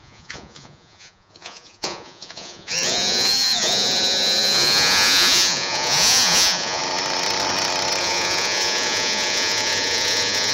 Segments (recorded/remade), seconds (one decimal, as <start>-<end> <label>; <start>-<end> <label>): 0.0-6.8 remade; 6.8-8.0 recorded; 8.0-10.5 remade